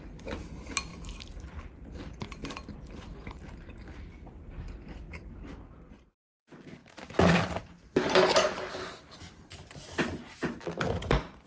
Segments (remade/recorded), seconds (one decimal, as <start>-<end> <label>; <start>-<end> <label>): 0.0-0.9 recorded; 0.9-5.9 remade; 5.9-6.8 recorded; 6.8-9.5 remade; 9.5-11.5 recorded